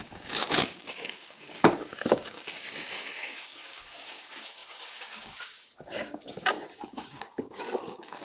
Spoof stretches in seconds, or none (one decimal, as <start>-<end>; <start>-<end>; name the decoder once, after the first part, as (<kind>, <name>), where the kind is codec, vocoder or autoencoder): 0.0-8.2 (codec, DAC)